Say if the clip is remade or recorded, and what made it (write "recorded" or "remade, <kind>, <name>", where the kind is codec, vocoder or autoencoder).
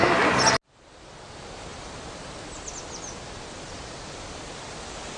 recorded